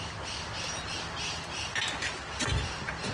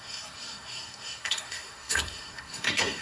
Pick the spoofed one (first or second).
second